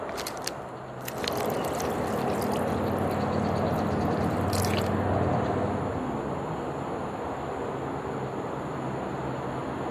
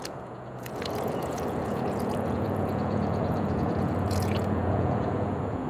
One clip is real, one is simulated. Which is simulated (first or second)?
second